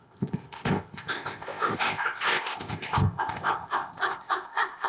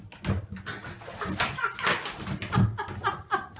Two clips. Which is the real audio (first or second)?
second